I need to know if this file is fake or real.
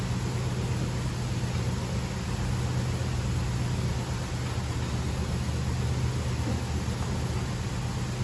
real